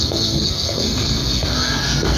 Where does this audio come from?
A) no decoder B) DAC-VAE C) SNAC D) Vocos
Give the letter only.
C